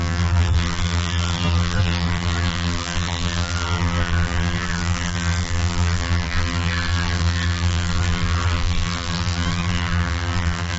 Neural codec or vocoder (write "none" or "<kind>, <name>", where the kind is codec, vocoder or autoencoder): vocoder, BigVGAN v2